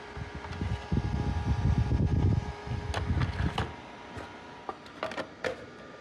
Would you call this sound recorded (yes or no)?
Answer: yes